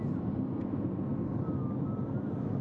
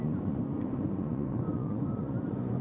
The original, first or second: first